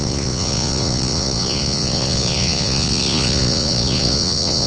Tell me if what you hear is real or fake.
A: fake